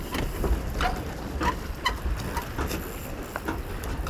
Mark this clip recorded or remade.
recorded